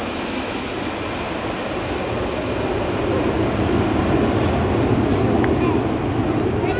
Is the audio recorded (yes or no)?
yes